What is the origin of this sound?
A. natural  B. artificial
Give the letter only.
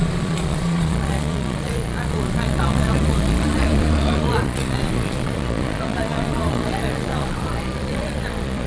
B